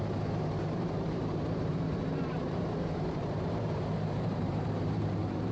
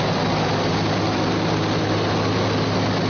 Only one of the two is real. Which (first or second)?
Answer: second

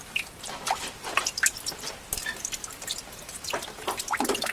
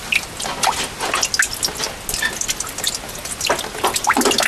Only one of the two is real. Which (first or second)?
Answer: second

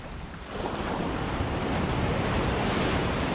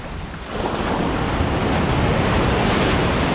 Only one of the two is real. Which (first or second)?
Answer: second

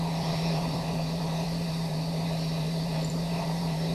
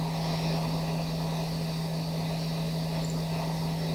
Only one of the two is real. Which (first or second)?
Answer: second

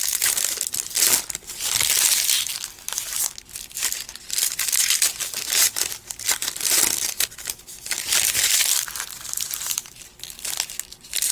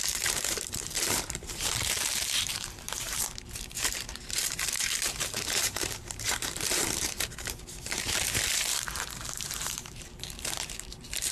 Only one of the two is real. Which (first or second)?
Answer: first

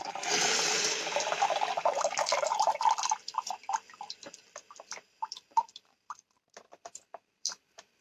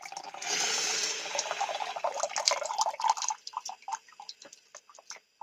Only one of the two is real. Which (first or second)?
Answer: second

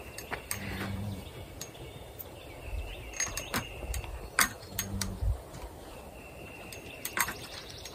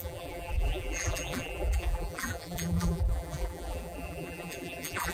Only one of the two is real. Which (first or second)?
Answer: first